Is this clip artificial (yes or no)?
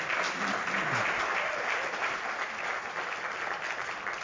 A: no